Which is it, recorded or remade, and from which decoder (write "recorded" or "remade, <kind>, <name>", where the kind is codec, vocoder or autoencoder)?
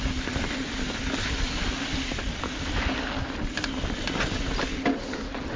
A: recorded